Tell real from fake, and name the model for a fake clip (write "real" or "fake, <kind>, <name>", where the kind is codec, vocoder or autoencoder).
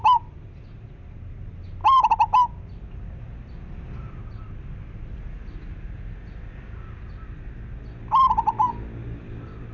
real